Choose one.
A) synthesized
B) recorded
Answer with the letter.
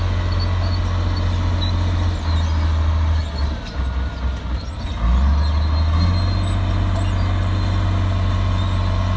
B